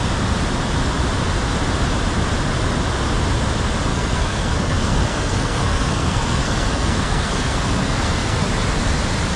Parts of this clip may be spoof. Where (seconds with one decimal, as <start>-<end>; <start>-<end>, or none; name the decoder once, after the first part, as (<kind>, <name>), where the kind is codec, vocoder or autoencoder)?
3.9-8.5 (codec, SNAC)